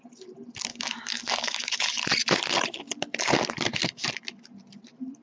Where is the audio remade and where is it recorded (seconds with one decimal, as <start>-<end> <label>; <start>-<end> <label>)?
0.0-0.7 recorded; 0.7-2.0 remade; 2.0-5.2 recorded